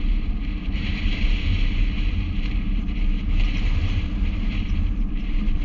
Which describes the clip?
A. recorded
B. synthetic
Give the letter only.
B